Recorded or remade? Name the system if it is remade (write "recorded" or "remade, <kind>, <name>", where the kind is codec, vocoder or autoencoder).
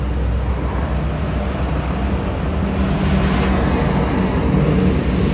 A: recorded